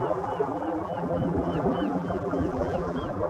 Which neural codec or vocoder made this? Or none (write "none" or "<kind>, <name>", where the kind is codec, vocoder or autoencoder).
vocoder, BigVGAN v2